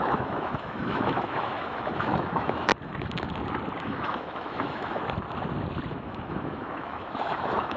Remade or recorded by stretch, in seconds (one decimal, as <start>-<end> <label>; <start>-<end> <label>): 0.0-2.7 remade; 2.7-3.8 recorded; 3.8-5.0 remade; 5.0-5.9 recorded; 5.9-7.8 remade